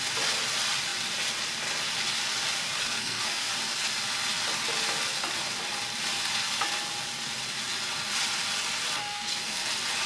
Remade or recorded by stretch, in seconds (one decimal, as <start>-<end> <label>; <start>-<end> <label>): 0.0-2.8 recorded; 2.8-3.5 remade; 3.5-9.0 recorded; 9.0-9.6 remade; 9.6-10.1 recorded